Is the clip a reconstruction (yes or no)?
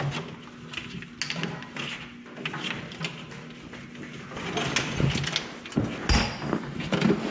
no